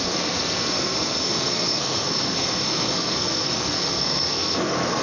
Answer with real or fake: fake